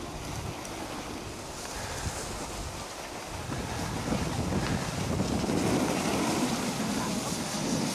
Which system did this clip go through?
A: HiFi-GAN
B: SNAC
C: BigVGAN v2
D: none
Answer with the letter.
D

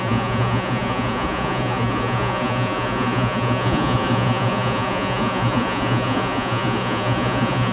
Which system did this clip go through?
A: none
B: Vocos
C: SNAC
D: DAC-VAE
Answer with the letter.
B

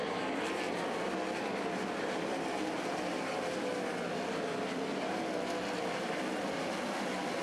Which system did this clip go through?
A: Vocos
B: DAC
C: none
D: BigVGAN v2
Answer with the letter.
C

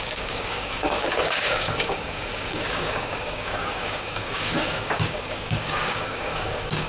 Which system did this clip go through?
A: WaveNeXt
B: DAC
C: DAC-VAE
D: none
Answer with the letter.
B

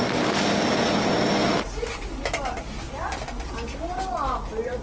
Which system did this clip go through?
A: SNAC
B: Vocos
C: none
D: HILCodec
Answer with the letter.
C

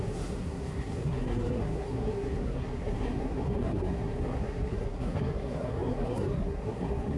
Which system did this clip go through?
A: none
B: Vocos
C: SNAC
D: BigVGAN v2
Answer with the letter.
C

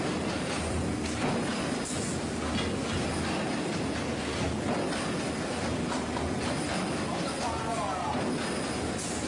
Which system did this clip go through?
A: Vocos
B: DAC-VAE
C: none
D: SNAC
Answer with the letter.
C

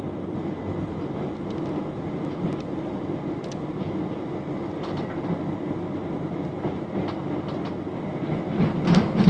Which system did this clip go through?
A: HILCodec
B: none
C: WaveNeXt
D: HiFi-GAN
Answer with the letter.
B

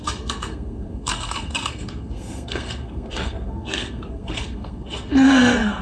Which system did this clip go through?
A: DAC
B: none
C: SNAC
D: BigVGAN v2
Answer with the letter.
C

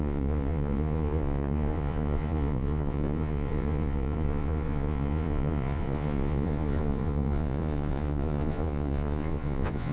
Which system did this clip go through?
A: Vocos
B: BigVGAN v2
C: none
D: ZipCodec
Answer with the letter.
A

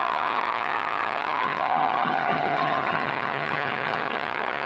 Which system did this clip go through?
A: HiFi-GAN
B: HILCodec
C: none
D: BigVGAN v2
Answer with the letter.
A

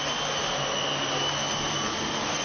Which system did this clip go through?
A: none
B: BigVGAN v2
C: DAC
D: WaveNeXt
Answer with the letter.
A